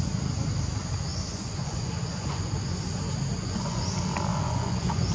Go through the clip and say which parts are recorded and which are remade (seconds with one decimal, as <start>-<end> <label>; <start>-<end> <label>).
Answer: 0.0-1.1 recorded; 1.1-2.5 remade; 2.5-3.4 recorded; 3.4-3.9 remade; 3.9-4.3 recorded; 4.3-5.1 remade